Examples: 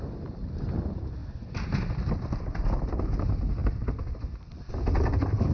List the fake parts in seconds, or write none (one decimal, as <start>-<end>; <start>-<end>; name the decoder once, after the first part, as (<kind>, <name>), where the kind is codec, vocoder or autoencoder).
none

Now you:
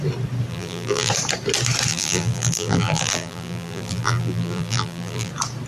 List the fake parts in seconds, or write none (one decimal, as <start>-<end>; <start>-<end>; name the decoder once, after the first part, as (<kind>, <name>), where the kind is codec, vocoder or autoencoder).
0.5-1.1 (vocoder, BigVGAN v2); 1.9-5.3

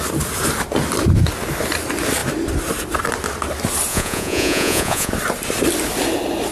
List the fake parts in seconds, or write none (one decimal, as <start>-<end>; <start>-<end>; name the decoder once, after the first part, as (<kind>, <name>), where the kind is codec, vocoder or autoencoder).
3.9-5.1 (vocoder, Vocos)

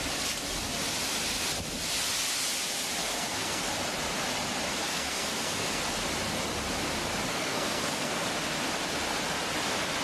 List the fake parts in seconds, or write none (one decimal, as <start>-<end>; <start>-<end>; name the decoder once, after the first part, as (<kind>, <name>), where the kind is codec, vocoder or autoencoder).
3.0-3.7 (codec, SNAC); 4.7-5.8; 7.3-8.3